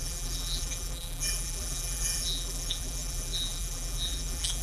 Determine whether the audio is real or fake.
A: fake